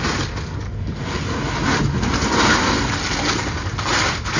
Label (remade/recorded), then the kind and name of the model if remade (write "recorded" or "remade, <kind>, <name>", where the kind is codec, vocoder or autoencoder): recorded